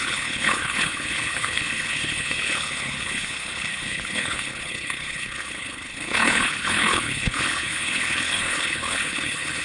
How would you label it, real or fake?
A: fake